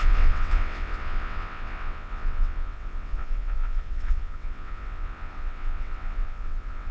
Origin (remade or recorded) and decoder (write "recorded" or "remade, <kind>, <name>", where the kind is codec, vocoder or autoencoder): remade, vocoder, WaveNeXt